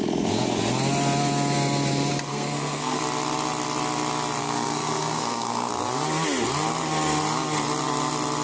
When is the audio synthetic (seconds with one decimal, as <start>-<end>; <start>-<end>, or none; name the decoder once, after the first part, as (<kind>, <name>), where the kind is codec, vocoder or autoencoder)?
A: 2.3-3.0 (codec, SNAC); 4.4-5.7